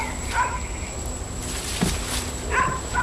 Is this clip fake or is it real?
real